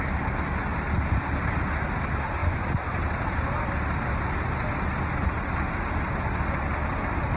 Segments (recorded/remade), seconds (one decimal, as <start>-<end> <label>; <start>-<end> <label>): 0.0-7.4 recorded